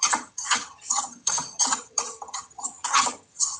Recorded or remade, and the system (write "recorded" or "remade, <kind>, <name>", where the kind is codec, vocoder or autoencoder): remade, vocoder, HiFi-GAN